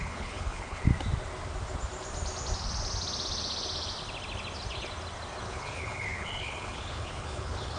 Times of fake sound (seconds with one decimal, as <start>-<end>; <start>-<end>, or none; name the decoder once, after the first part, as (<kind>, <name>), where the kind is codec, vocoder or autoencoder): 0.0-0.9 (codec, HILCodec); 5.4-7.8